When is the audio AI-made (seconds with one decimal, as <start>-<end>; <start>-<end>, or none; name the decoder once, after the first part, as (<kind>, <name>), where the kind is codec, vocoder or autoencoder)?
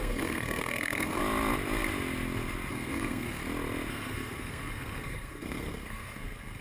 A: 0.0-1.2 (codec, SNAC); 2.7-3.4; 3.9-6.6